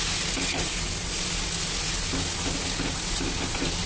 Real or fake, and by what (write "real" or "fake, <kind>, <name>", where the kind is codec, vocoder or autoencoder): real